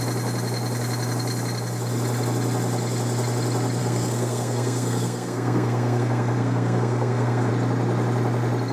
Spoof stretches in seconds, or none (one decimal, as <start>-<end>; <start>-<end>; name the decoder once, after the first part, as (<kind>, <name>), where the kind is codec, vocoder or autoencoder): 3.8-7.5 (codec, SNAC)